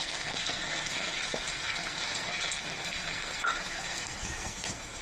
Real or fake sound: fake